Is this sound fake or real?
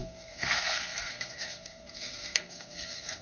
fake